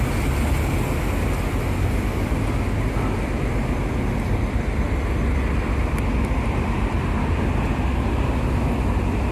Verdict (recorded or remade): recorded